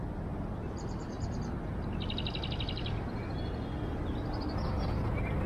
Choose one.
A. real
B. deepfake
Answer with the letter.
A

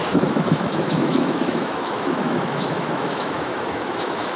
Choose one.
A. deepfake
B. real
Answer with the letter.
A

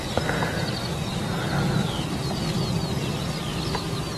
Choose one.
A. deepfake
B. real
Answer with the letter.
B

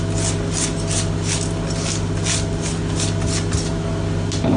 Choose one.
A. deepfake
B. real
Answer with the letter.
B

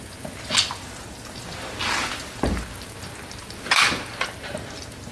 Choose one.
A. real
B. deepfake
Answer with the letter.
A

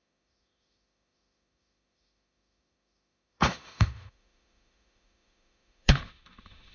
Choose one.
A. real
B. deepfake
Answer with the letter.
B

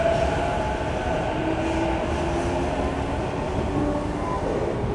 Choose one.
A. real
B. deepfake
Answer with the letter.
A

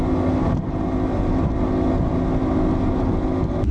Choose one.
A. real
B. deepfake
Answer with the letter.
A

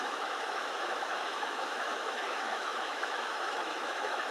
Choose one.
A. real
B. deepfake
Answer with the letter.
B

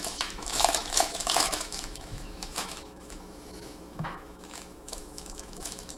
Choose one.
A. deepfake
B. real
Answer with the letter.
A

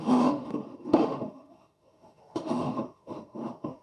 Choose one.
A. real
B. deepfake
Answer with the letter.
B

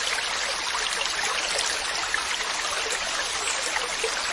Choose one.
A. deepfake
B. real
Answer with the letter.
B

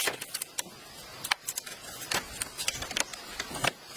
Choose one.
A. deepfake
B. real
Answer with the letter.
B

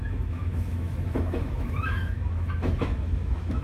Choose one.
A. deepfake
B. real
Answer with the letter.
A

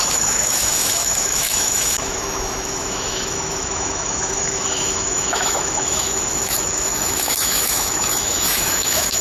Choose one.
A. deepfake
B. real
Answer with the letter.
A